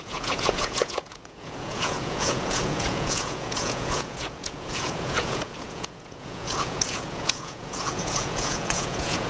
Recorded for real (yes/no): no